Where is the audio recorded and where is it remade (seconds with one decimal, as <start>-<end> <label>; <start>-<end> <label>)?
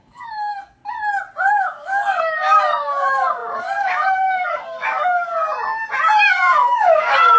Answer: 0.0-0.8 remade; 0.8-1.5 recorded; 1.5-5.4 remade; 5.4-6.3 recorded; 6.3-7.4 remade